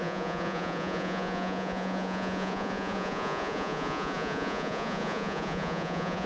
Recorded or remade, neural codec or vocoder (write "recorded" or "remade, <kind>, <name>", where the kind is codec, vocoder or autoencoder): remade, vocoder, Vocos